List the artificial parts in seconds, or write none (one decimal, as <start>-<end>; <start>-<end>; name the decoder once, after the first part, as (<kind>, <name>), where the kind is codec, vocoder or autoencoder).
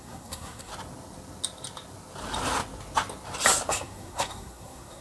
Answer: 0.0-0.7 (codec, SNAC); 3.7-5.0